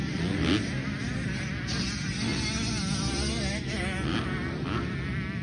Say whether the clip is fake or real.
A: real